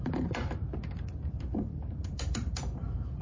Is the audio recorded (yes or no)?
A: no